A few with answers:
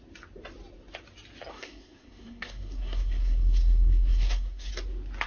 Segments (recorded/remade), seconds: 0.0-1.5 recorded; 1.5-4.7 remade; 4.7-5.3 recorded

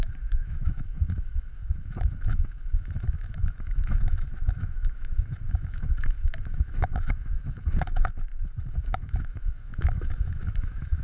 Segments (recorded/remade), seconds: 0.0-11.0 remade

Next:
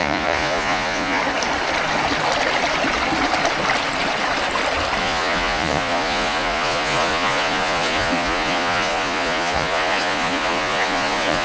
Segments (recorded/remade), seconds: 0.0-1.2 remade; 1.2-5.0 recorded; 5.0-11.4 remade

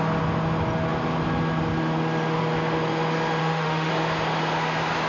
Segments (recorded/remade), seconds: 0.0-3.4 recorded; 3.4-3.9 remade; 3.9-5.1 recorded

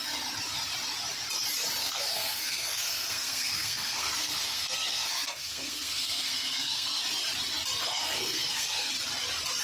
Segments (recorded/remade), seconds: 0.0-1.8 recorded; 1.8-7.0 remade; 7.0-7.8 recorded; 7.8-8.9 remade; 8.9-9.6 recorded

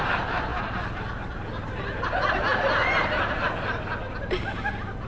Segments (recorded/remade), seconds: 0.0-0.5 remade; 0.5-1.3 recorded; 1.3-5.1 remade